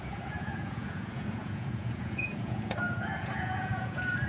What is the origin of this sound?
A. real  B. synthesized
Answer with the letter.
B